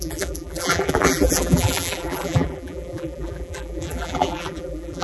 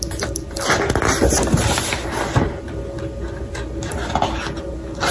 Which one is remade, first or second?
first